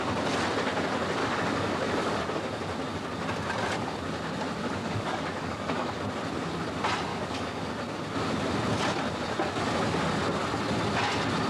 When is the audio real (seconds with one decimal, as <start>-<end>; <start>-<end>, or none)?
0.0-1.2; 2.2-4.8; 6.0-7.1; 7.7-11.5